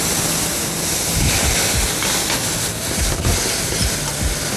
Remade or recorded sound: recorded